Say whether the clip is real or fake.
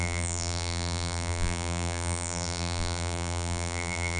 fake